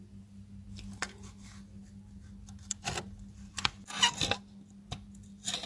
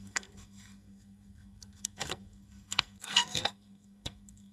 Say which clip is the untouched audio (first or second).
first